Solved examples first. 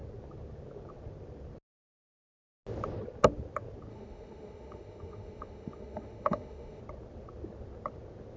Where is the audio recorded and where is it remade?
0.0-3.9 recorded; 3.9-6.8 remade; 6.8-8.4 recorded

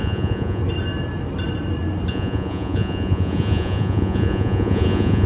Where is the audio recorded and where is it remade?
0.0-0.6 remade; 0.6-2.1 recorded; 2.1-5.3 remade

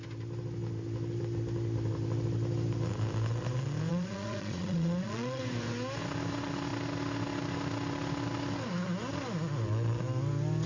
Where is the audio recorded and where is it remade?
0.0-3.9 recorded; 3.9-5.4 remade; 5.4-10.7 recorded

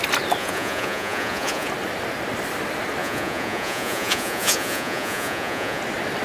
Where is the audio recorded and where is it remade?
0.0-0.4 recorded; 0.4-1.7 remade; 1.7-3.0 recorded; 3.0-5.8 remade; 5.8-6.2 recorded